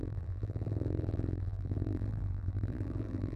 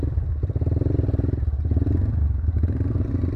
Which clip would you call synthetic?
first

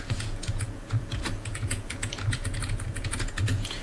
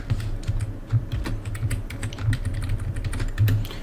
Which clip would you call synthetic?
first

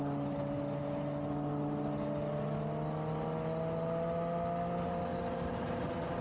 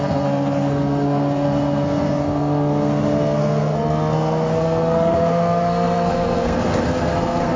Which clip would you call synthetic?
second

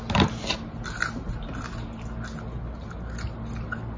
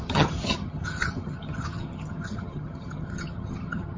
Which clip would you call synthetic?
second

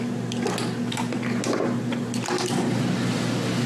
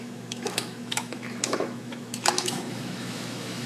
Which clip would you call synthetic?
second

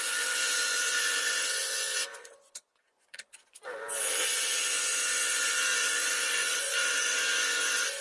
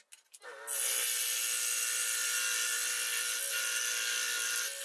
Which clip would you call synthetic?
first